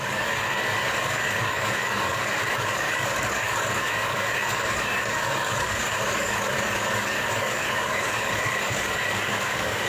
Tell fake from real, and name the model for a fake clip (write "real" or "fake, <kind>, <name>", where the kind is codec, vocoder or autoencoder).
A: fake, codec, DAC